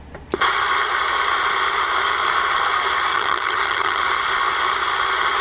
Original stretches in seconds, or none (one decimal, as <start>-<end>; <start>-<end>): 0.0-3.1; 4.0-5.4